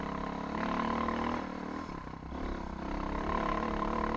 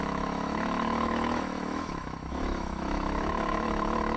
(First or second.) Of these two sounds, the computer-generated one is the second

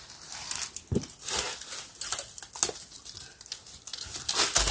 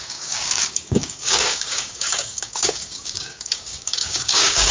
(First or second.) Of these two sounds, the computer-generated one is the second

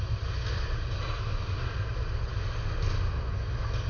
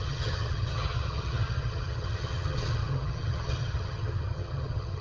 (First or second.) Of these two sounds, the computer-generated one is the second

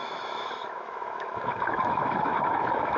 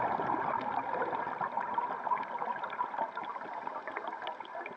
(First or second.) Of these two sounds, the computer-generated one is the first